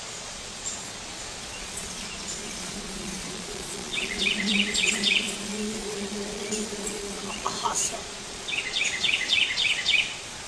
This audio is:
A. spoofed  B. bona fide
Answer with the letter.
A